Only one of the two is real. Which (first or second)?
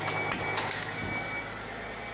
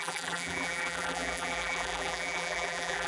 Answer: first